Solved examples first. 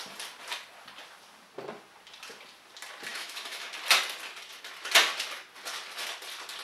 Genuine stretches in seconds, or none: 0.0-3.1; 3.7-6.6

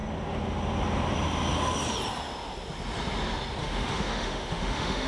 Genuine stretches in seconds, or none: 0.0-3.6

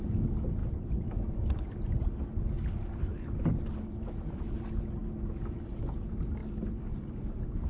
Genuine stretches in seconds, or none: 0.0-7.7